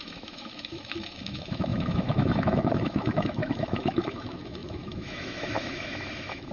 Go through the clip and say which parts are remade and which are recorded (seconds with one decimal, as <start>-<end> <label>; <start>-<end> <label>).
0.0-6.5 remade